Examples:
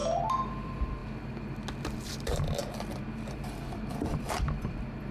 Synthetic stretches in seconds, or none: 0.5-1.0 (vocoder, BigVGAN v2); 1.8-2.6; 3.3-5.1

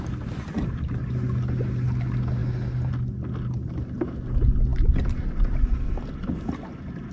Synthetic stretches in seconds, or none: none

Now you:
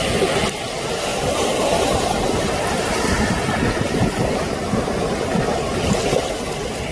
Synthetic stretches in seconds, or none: 1.1-4.5 (vocoder, BigVGAN v2)